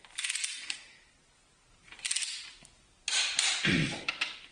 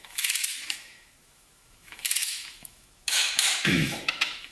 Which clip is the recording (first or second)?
first